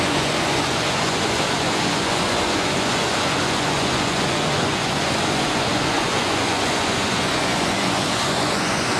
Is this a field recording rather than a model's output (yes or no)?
no